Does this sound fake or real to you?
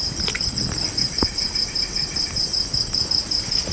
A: real